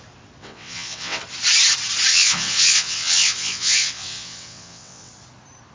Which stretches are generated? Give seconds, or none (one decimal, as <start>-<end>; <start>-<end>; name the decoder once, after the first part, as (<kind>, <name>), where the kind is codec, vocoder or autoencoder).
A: 0.4-1.2 (vocoder, WaveNeXt); 2.1-5.1